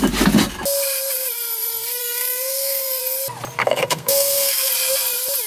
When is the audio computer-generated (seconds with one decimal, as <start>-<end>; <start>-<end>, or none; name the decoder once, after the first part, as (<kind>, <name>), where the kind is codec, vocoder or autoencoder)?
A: 2.0-3.0 (codec, SNAC); 3.6-4.7